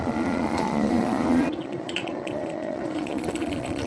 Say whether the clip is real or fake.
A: fake